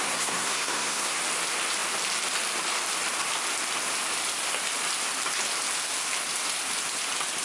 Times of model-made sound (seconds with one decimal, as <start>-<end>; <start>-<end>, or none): 0.0-1.2